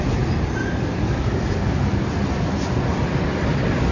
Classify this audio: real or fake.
fake